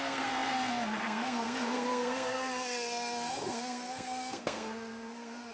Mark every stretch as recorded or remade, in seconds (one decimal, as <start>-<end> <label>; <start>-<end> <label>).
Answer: 0.0-5.5 remade